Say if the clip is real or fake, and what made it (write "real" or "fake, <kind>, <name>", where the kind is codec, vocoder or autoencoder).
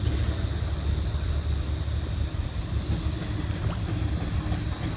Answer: real